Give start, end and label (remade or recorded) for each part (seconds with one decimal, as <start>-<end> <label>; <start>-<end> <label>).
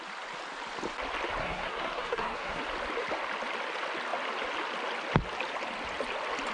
0.0-1.4 recorded; 1.4-2.6 remade; 2.6-6.5 recorded